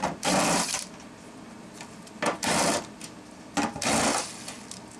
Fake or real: real